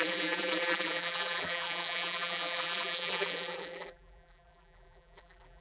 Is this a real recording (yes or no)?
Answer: no